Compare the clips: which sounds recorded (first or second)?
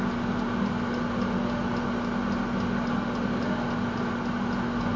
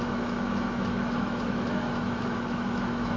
first